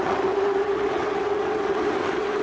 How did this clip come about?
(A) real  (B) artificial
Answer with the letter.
B